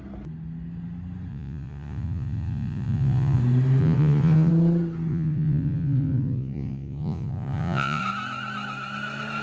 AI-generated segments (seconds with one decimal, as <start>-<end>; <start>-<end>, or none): 1.3-3.4; 3.8-4.5; 5.1-8.0